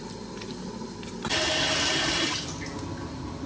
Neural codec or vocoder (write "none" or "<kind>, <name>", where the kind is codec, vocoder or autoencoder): none